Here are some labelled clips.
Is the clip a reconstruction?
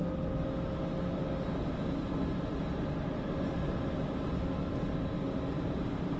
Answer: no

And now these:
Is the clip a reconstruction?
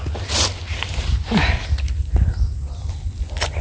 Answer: no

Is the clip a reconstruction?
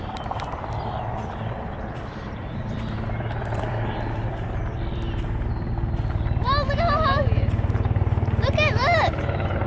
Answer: yes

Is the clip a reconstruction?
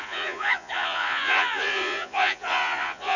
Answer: yes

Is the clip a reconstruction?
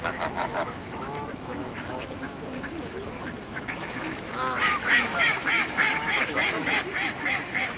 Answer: yes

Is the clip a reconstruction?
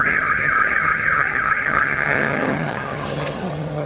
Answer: yes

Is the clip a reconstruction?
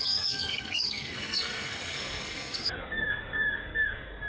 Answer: yes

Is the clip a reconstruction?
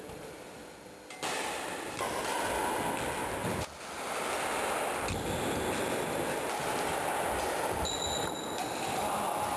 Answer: no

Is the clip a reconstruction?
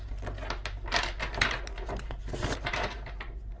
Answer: no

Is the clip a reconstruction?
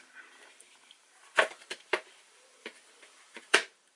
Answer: yes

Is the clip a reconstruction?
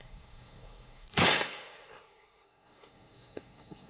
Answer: yes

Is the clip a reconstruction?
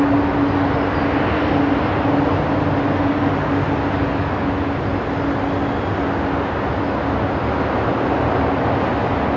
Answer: no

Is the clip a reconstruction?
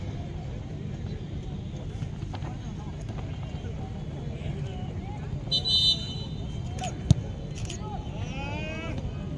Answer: no